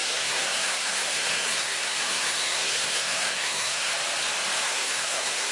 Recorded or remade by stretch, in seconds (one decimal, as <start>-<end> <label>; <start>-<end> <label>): 0.0-3.9 remade; 3.9-4.6 recorded; 4.6-5.5 remade